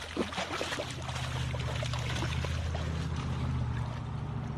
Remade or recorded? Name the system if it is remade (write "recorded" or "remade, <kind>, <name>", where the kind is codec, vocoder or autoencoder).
recorded